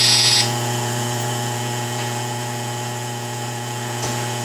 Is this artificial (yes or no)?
yes